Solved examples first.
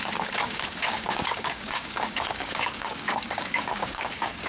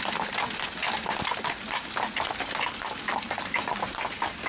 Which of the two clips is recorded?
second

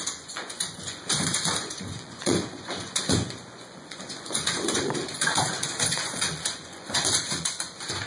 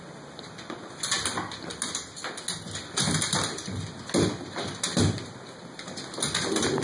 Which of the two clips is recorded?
second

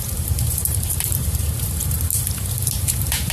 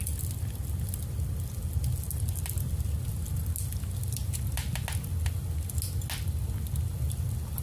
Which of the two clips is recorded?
second